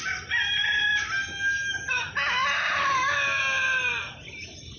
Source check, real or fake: real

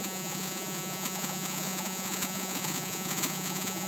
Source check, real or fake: fake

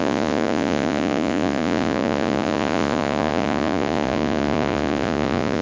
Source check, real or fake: fake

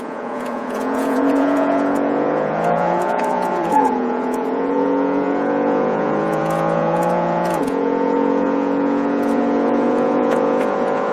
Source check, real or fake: fake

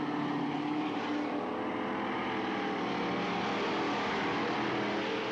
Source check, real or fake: real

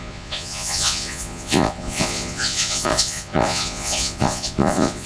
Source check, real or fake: fake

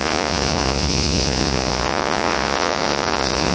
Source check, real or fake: fake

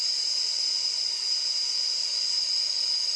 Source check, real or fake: real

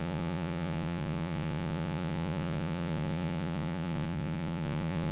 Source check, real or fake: fake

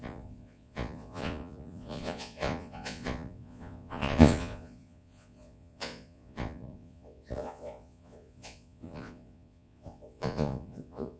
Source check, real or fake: fake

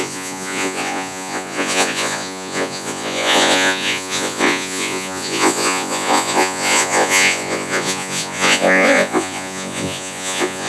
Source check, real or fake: fake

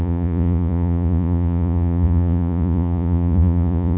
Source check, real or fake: fake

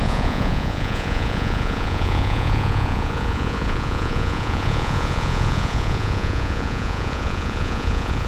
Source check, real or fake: fake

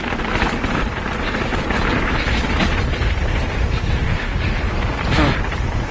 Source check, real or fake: real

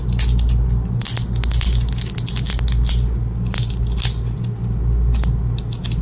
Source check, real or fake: real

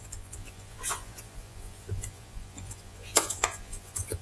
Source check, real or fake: fake